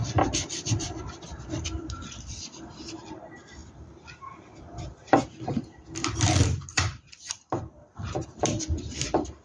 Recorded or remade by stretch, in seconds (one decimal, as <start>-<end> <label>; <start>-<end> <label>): 0.0-9.4 remade

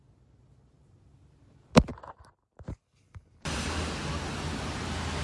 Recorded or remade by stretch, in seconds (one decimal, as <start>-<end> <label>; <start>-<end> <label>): 0.0-1.9 recorded; 1.9-3.3 remade; 3.3-5.2 recorded

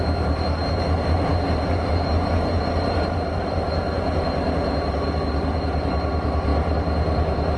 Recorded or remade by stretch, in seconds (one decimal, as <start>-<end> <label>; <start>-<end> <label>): 0.0-7.6 remade

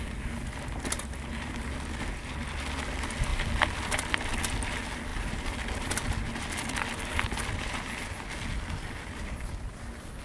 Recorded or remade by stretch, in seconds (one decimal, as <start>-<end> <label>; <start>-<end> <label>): 0.0-3.3 recorded; 3.3-4.4 remade; 4.4-5.1 recorded; 5.1-5.9 remade; 5.9-10.2 recorded

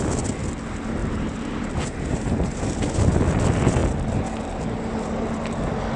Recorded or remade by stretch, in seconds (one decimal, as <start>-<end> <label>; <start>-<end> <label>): 0.0-1.0 recorded; 1.0-2.6 remade; 2.6-6.0 recorded

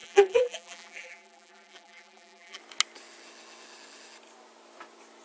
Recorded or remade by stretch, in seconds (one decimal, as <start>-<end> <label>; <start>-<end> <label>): 0.0-2.6 remade; 2.6-5.2 recorded